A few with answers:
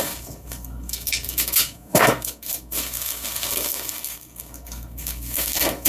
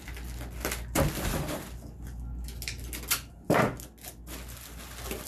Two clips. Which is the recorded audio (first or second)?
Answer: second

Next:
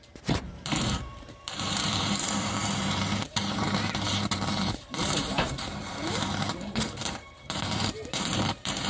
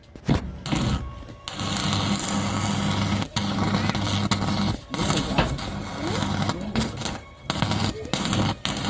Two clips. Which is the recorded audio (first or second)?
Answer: second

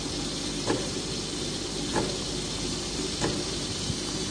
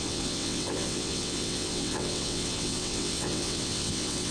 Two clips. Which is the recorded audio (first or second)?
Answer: first